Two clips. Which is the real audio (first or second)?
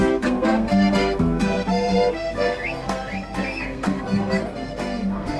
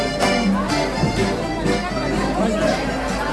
second